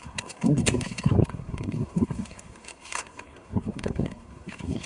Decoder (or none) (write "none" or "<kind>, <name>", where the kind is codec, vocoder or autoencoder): codec, SNAC